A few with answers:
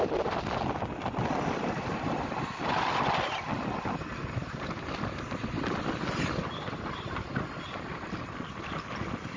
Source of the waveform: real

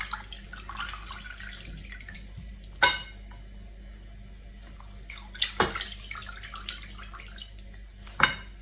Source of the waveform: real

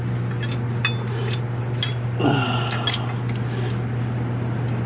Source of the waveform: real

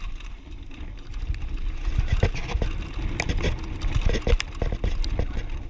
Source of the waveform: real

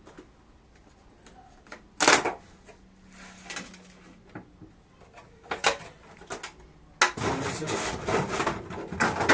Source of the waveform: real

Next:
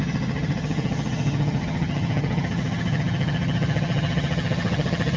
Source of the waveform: fake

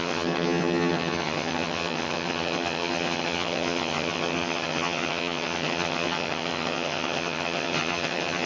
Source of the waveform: fake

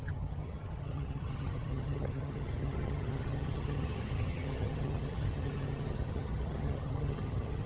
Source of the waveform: fake